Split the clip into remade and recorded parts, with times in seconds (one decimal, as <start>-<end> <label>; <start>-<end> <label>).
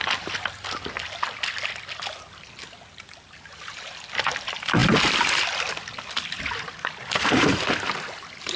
0.0-8.6 recorded